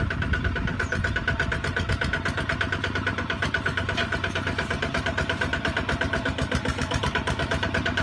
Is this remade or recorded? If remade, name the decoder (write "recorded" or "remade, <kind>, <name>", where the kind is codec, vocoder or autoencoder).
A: remade, vocoder, BigVGAN v2